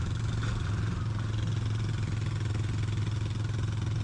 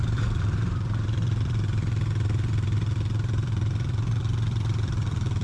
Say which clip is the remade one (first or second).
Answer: second